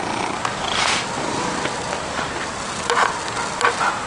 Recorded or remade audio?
recorded